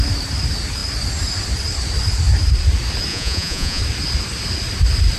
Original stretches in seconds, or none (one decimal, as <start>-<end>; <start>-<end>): 0.0-3.1; 3.8-5.2

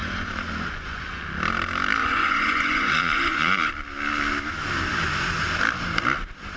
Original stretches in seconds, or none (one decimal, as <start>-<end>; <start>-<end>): 1.2-2.0; 3.7-6.6

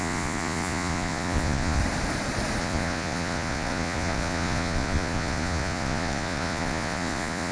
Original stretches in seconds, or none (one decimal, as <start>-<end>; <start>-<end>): 1.8-2.6

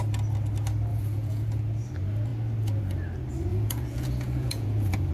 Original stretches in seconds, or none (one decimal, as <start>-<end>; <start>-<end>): 0.0-0.9; 1.5-3.5

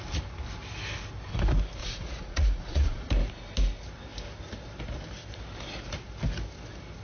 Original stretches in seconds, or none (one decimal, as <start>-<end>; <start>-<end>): 0.0-1.8; 3.1-7.0